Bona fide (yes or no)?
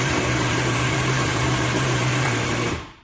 no